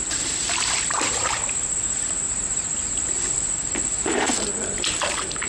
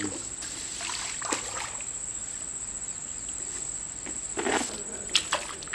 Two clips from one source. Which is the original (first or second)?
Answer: second